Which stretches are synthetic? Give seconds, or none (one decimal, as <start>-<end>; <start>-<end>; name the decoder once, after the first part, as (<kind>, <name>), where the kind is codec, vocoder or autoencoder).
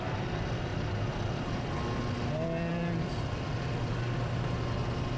0.7-1.7 (vocoder, BigVGAN v2)